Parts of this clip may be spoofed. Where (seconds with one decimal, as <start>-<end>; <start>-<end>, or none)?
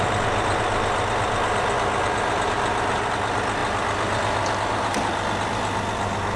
none